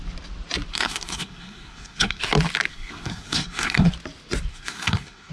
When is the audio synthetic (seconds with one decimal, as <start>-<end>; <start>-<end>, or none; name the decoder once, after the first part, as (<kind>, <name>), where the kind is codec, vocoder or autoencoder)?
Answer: 0.7-2.2 (codec, SNAC); 2.7-3.9; 4.5-5.3